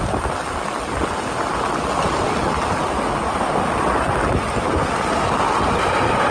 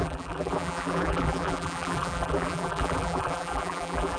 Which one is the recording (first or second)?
first